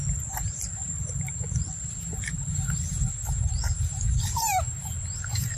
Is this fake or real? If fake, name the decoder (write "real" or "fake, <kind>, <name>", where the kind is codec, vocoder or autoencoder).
fake, vocoder, BigVGAN v2